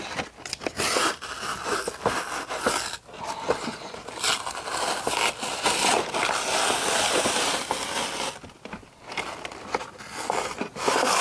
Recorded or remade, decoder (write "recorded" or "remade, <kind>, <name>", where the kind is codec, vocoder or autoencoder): recorded